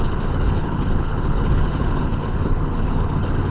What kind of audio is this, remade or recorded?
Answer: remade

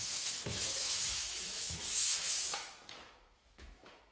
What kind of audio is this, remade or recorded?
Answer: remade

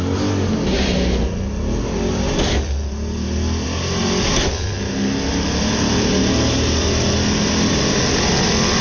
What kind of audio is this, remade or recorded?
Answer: recorded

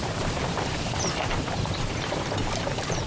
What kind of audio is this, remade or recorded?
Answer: remade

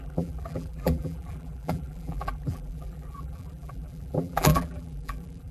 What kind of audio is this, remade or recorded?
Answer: remade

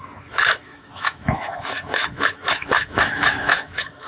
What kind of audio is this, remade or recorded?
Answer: remade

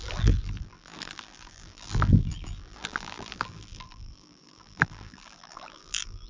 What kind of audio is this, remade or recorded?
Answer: remade